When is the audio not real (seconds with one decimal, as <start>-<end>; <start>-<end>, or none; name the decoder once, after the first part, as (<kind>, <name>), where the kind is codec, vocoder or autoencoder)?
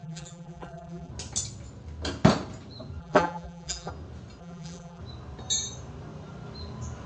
0.0-1.1 (vocoder, BigVGAN v2); 3.0-3.9; 4.4-5.0